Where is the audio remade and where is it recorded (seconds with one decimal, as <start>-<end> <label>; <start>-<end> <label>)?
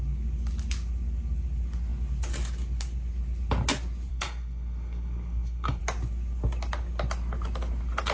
0.0-4.1 recorded; 4.1-5.8 remade; 5.8-8.1 recorded